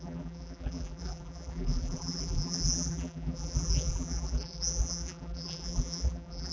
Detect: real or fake fake